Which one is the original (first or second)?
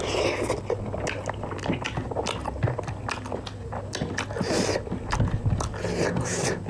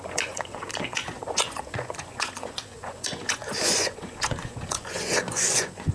first